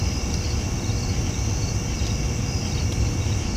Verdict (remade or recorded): remade